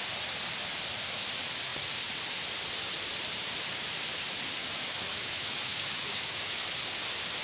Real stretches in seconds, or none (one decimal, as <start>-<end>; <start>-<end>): 0.0-4.6; 6.8-7.4